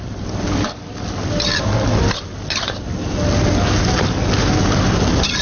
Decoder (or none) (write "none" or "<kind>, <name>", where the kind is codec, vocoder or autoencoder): none